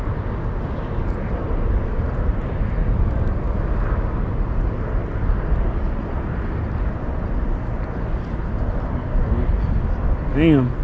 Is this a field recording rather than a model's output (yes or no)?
yes